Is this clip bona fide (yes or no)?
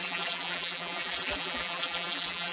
no